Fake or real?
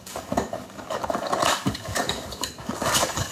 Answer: fake